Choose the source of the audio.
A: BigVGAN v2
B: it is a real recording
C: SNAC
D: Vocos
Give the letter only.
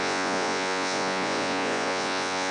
D